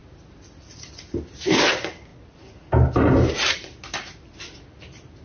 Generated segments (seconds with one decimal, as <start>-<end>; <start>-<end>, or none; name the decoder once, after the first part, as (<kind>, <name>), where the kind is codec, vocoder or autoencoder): none